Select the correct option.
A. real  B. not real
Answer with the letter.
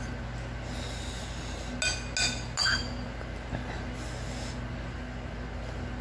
A